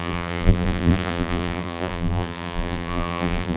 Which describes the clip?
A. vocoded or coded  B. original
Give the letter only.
A